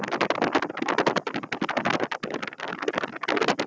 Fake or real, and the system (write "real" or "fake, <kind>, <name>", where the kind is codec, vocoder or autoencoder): real